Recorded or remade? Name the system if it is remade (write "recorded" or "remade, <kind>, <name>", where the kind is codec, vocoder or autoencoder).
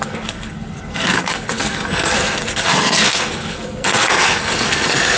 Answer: remade, codec, SNAC